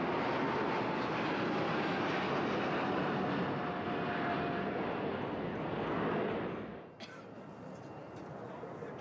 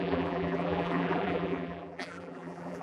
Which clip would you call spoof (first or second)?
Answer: second